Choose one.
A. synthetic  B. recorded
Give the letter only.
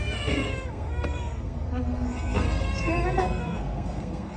A